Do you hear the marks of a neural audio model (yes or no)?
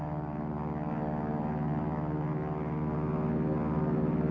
no